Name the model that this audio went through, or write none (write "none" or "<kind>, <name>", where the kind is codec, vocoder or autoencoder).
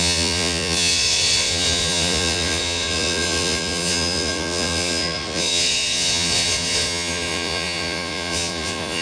vocoder, Vocos